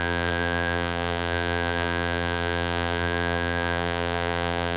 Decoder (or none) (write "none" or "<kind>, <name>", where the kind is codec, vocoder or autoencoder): vocoder, BigVGAN v2